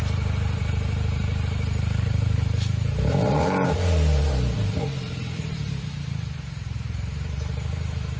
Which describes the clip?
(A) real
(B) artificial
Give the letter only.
B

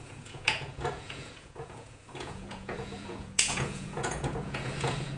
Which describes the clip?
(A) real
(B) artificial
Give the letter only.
B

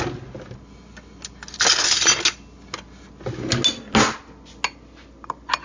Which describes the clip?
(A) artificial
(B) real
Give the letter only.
B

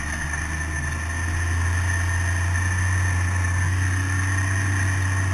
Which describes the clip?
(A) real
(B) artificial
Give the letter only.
A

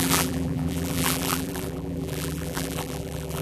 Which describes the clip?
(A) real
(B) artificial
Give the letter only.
B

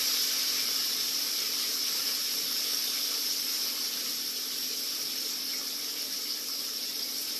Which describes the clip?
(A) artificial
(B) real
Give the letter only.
A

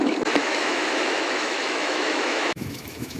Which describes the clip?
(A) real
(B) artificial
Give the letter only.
B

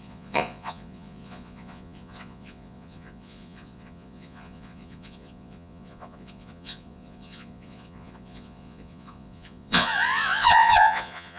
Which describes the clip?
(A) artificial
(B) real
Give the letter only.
A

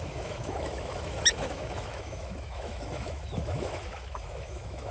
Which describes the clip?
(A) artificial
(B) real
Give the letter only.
A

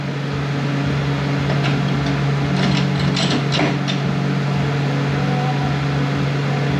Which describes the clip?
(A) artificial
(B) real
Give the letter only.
B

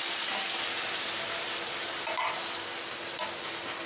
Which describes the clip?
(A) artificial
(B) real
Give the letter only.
B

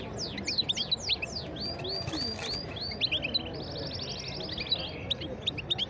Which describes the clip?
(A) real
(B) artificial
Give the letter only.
A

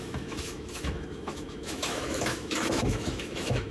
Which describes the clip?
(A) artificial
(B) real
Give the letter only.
A